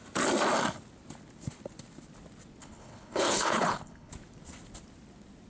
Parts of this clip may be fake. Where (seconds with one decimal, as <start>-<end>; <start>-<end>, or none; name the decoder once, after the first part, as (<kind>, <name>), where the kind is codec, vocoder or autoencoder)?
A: 2.6-4.1 (codec, HILCodec)